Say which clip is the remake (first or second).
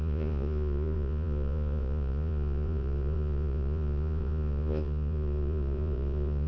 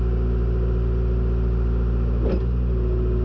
first